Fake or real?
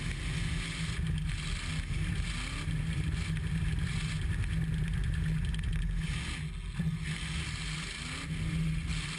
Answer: real